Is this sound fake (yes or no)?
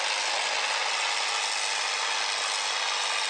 no